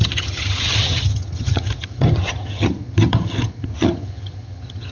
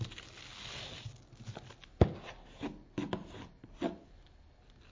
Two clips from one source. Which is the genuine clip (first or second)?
second